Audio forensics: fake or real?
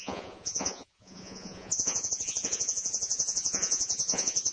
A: fake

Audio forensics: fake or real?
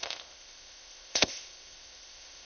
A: fake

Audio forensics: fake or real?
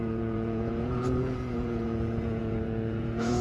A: fake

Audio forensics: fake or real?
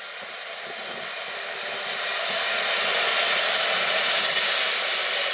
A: fake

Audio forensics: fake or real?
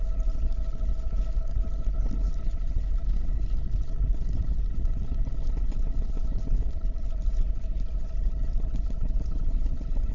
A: fake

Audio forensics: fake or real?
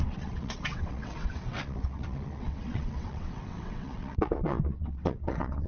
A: fake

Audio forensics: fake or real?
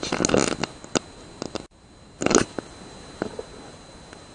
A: real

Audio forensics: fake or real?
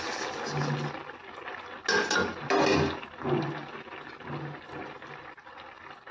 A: real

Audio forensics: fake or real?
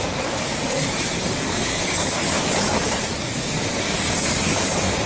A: fake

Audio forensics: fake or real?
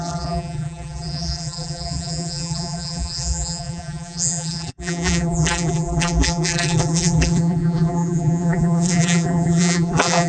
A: fake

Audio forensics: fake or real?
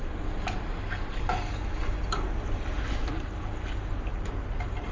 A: real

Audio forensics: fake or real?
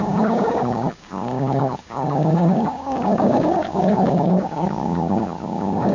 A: fake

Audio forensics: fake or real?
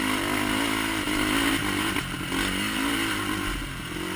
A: real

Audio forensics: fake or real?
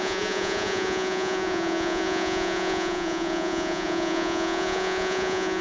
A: fake